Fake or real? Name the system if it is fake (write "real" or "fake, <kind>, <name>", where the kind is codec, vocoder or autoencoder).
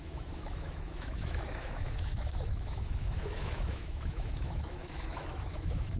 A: fake, autoencoder, DAC-VAE